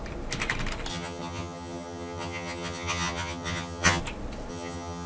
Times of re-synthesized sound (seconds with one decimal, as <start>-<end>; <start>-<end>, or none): 0.9-4.0; 4.5-5.1